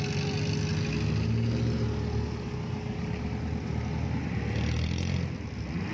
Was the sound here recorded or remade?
recorded